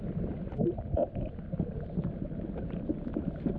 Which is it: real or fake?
real